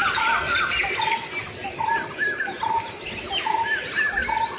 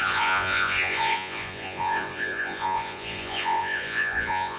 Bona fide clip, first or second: first